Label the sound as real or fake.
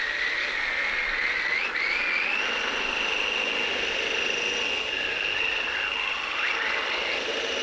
real